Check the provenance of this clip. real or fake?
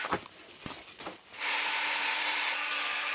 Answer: real